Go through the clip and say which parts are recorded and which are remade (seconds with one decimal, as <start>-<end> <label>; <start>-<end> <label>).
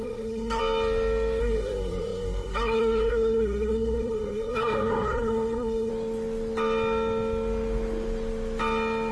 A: 0.0-0.6 remade; 0.6-1.4 recorded; 1.4-5.9 remade; 5.9-9.1 recorded